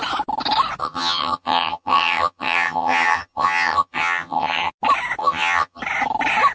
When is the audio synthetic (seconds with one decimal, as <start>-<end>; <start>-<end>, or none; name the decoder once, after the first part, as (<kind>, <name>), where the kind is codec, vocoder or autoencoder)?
0.8-4.7 (vocoder, HiFi-GAN); 5.2-5.8